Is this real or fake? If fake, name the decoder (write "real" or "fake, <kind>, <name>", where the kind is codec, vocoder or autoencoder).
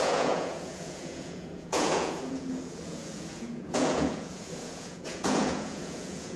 fake, vocoder, Vocos